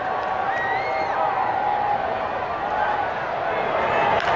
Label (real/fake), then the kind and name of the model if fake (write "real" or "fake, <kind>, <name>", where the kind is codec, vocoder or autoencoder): real